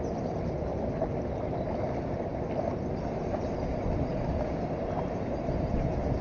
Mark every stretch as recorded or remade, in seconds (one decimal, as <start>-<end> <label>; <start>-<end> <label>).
0.0-6.2 recorded